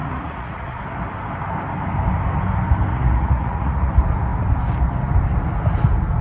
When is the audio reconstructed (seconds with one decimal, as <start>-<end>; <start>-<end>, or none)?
0.0-0.8; 2.9-3.9